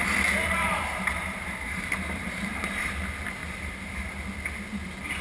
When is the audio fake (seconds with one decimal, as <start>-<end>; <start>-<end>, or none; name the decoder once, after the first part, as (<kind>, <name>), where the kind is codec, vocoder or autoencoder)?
0.4-2.9 (vocoder, BigVGAN v2); 3.4-4.1